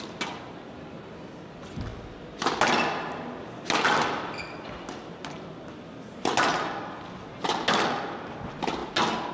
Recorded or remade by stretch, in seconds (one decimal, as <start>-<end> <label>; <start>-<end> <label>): 0.0-9.3 recorded